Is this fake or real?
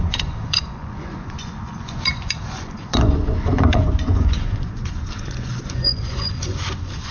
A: fake